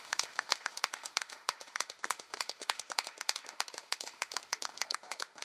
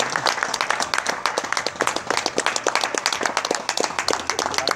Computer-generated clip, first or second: first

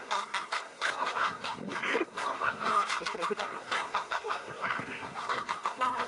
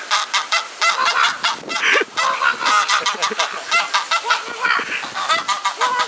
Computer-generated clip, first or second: first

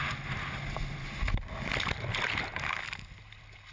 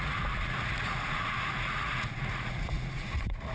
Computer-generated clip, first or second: second